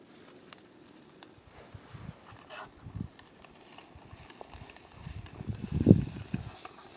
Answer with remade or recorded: recorded